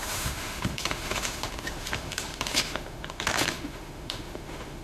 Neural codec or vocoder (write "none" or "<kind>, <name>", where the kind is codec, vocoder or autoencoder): autoencoder, DAC-VAE